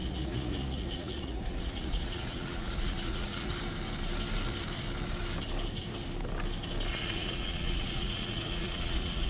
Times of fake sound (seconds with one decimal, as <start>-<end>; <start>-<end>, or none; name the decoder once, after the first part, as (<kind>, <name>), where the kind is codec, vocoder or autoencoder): 0.0-3.5 (vocoder, Vocos); 6.9-9.3